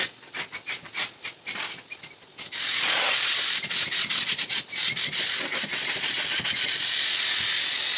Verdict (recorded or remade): recorded